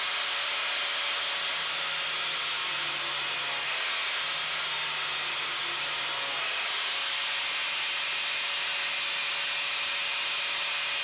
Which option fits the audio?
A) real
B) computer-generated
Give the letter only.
A